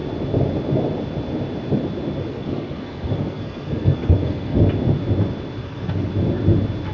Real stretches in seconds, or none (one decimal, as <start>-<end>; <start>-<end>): 0.0-2.3; 4.6-5.6; 6.1-6.9